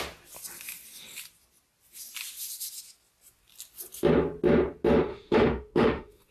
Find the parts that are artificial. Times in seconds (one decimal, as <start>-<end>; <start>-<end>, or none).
5.1-6.3